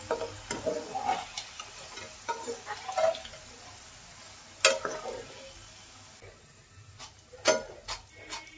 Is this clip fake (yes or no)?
no